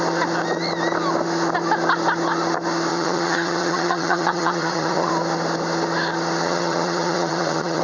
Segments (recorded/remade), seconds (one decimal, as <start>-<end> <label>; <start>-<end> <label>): 0.0-2.9 recorded; 2.9-5.1 remade; 5.1-6.4 recorded; 6.4-7.8 remade